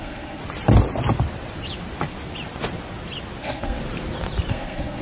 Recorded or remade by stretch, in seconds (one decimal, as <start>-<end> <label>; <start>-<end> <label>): 0.0-0.4 remade; 0.4-3.4 recorded; 3.4-3.8 remade; 3.8-4.5 recorded; 4.5-5.0 remade